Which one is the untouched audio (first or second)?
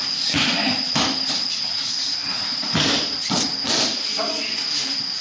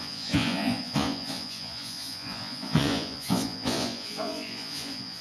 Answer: first